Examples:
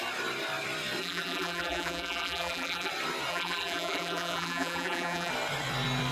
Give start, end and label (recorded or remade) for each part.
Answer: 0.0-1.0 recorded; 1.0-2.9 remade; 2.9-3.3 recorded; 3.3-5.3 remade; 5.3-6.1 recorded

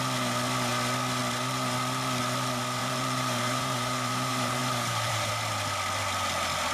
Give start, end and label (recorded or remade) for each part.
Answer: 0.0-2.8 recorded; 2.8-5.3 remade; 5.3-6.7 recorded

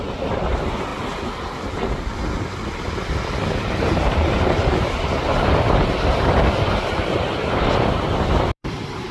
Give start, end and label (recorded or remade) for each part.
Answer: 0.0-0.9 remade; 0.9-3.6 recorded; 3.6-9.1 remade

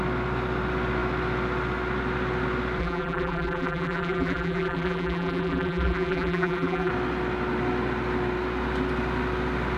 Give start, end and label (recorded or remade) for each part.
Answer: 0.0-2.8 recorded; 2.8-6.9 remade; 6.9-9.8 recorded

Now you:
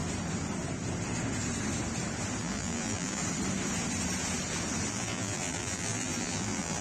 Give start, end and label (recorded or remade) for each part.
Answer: 0.0-2.4 recorded; 2.4-3.2 remade; 3.2-4.9 recorded; 4.9-6.8 remade

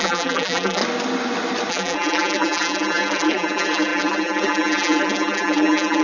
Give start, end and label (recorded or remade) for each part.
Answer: 0.0-0.8 remade; 0.8-1.7 recorded; 1.7-6.0 remade

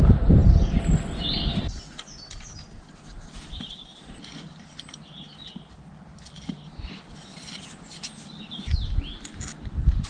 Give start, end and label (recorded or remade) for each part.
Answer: 0.0-10.1 recorded

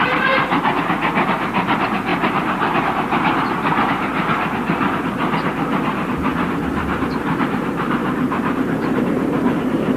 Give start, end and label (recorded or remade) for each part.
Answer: 0.0-6.3 remade; 6.3-7.1 recorded; 7.1-10.0 remade